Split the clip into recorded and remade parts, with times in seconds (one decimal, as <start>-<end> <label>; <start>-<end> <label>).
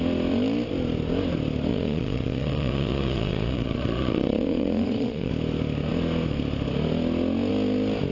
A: 0.0-1.7 recorded; 1.7-5.3 remade; 5.3-8.1 recorded